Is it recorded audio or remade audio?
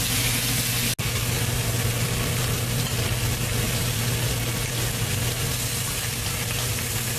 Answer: recorded